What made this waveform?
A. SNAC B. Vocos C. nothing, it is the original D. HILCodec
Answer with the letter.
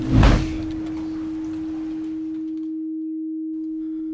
C